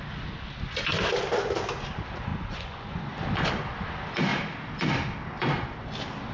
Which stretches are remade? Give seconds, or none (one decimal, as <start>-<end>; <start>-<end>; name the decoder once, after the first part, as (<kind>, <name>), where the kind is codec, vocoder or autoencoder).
2.3-3.1 (vocoder, Vocos)